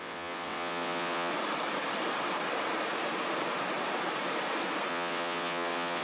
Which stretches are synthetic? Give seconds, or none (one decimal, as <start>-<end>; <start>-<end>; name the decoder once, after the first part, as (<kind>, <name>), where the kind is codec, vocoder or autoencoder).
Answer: 0.0-1.3 (vocoder, WaveNeXt); 4.9-6.0